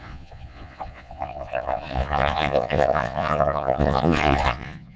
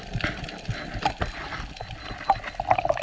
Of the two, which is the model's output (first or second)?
first